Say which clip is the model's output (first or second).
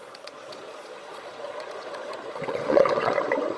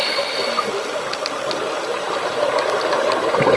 first